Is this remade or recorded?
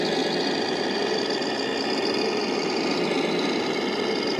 recorded